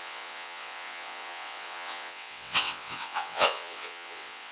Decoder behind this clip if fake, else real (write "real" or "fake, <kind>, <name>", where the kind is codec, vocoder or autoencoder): fake, vocoder, WaveNeXt